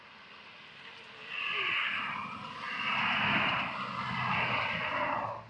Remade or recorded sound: recorded